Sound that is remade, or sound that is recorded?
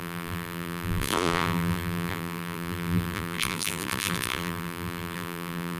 remade